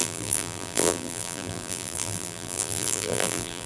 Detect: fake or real fake